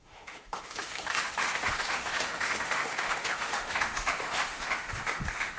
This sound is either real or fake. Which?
fake